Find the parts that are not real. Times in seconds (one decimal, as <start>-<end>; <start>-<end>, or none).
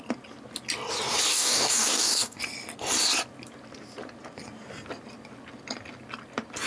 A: 1.3-2.4